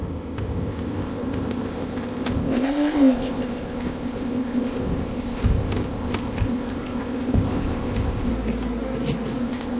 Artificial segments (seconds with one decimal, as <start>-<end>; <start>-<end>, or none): 0.0-8.3; 9.4-9.8